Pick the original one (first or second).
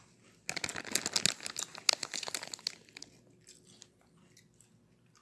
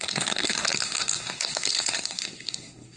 first